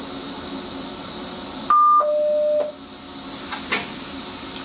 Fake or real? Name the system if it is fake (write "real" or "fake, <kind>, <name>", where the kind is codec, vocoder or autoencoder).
real